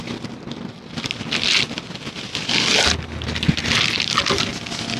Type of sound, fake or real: real